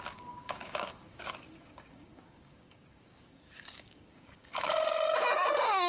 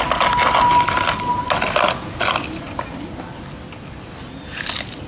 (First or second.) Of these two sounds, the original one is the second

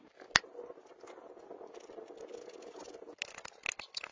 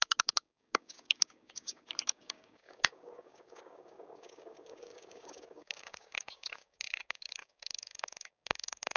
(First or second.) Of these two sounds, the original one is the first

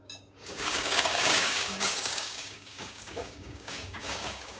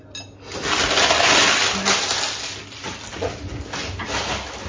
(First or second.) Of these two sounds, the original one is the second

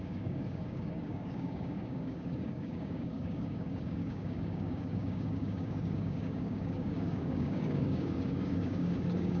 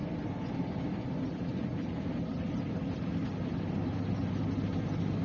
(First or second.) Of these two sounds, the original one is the second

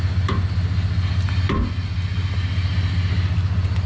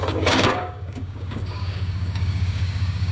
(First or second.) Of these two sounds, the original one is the first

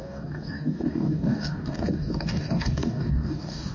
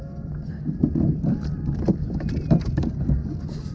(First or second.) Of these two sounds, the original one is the second